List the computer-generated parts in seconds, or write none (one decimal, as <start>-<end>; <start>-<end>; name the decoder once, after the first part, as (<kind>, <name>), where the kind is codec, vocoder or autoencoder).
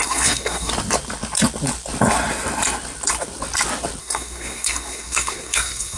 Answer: 0.0-0.7 (codec, SNAC); 4.0-6.0